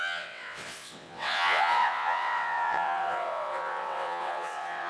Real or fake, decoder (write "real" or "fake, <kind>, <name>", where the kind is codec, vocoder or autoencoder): fake, vocoder, WaveNeXt